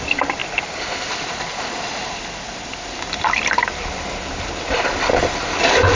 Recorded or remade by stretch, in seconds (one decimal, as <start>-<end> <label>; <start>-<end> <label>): 0.0-6.0 recorded